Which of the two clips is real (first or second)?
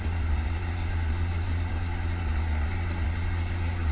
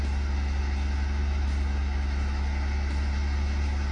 second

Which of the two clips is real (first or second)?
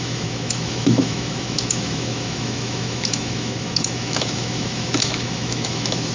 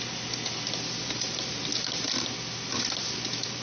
second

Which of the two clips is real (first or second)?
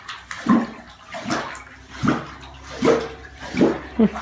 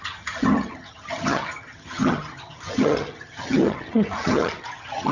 first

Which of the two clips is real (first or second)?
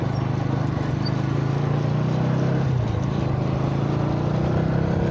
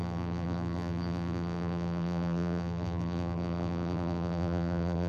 first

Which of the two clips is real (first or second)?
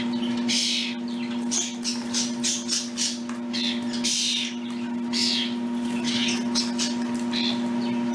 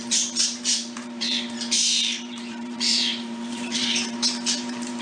first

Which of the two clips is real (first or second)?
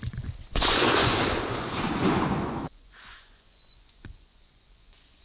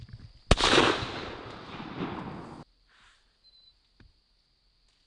second